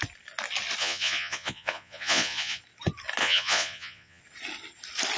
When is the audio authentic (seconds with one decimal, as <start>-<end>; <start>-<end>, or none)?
0.0-0.8; 2.6-3.2; 4.2-5.2